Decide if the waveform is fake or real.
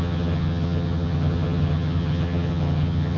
fake